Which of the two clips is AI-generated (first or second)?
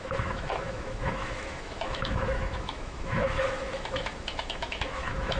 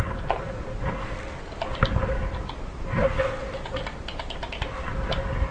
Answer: first